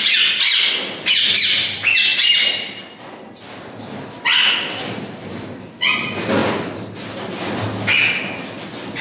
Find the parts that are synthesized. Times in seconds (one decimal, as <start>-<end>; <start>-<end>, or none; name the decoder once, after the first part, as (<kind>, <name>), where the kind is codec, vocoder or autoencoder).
none